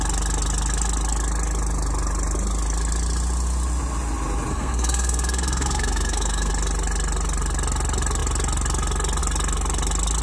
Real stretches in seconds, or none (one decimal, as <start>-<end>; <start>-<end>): 0.0-4.5; 6.5-10.2